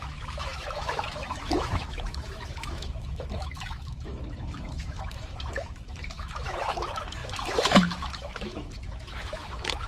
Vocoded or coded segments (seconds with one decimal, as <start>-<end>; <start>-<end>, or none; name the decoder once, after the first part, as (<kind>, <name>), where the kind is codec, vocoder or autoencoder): 0.0-9.9 (autoencoder, DAC-VAE)